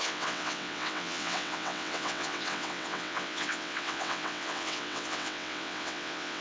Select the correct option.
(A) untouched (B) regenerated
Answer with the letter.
B